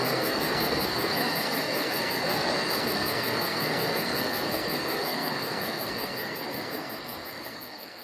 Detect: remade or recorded remade